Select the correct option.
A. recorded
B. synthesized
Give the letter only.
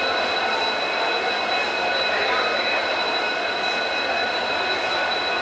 A